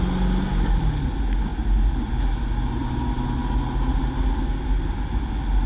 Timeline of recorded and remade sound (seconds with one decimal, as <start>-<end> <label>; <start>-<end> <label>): 0.0-5.7 recorded